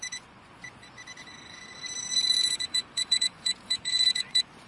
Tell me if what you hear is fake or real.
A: fake